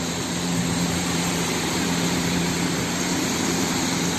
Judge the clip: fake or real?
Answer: fake